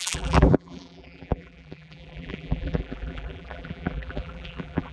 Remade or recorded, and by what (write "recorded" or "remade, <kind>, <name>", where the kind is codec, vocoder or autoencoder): remade, vocoder, BigVGAN v2